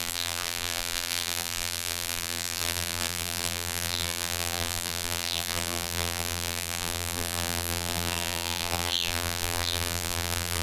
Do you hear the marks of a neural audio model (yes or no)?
yes